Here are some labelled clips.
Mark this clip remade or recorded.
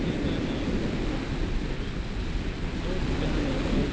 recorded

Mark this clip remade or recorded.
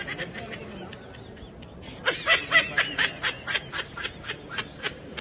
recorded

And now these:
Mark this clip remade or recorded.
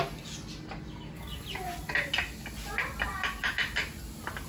recorded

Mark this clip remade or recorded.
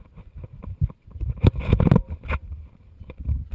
recorded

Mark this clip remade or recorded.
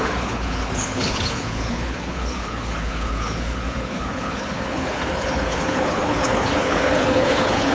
remade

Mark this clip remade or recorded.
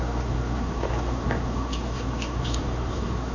remade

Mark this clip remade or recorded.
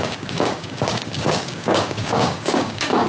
remade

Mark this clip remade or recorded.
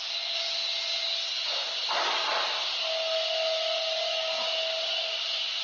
recorded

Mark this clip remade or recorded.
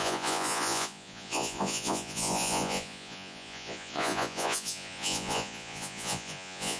remade